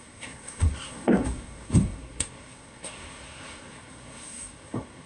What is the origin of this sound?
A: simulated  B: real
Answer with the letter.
A